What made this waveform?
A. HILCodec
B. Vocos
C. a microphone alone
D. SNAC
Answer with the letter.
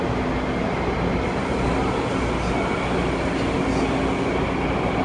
C